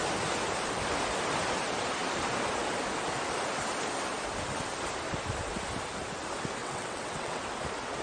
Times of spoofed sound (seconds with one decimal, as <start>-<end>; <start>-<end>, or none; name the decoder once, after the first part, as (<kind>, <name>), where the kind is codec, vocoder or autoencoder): 6.6-7.4 (vocoder, WaveNeXt)